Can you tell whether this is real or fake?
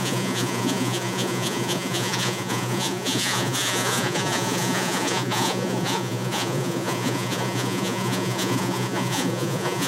fake